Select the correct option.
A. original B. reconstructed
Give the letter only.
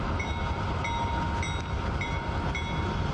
A